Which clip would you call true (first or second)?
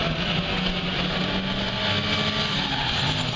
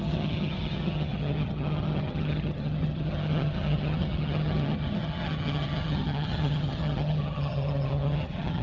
first